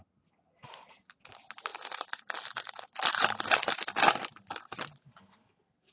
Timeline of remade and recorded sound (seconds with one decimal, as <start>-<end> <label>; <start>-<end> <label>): 0.0-5.9 recorded